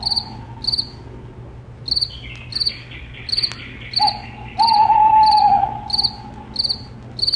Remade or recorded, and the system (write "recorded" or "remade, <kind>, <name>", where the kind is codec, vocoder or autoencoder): recorded